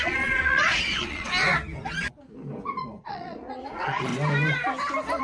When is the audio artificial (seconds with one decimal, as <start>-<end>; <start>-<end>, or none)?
0.0-1.3; 3.0-4.1